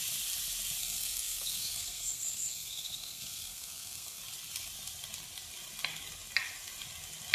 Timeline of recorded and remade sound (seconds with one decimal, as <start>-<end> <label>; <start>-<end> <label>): 0.0-0.8 recorded; 0.8-4.2 remade; 4.2-7.3 recorded